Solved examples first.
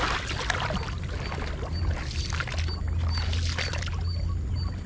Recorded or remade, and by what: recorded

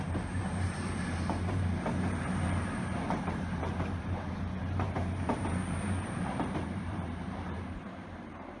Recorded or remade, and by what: remade, vocoder, BigVGAN v2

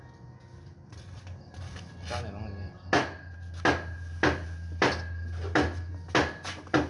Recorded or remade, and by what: recorded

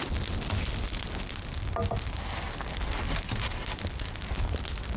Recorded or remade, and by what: recorded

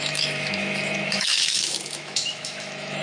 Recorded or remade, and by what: remade, autoencoder, DAC-VAE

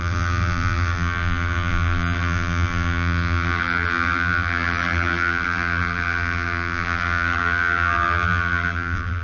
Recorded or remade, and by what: remade, vocoder, BigVGAN v2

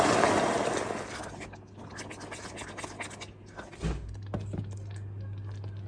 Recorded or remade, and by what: recorded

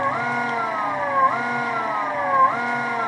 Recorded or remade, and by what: recorded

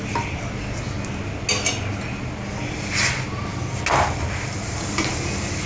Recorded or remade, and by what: recorded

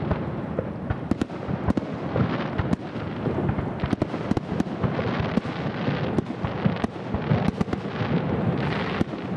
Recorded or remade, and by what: recorded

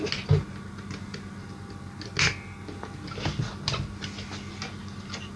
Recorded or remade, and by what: recorded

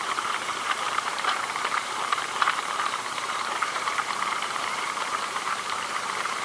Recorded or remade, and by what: remade, vocoder, BigVGAN v2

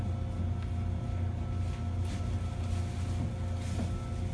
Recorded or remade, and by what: recorded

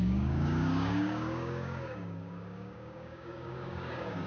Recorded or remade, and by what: remade, codec, DAC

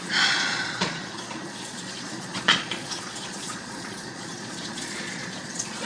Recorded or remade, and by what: remade, vocoder, Vocos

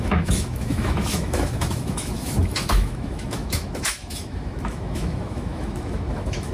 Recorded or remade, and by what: remade, autoencoder, DAC-VAE